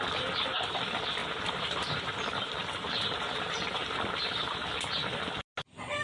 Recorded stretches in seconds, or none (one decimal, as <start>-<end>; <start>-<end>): 0.0-1.2; 4.7-6.0